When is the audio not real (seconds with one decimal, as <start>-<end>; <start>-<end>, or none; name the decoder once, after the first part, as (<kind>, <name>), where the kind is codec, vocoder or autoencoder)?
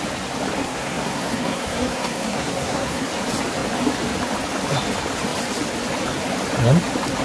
0.6-3.1 (codec, SNAC)